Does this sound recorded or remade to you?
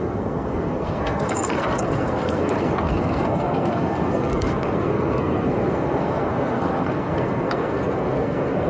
remade